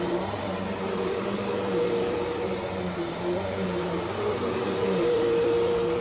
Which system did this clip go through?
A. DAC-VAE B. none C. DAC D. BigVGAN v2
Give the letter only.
D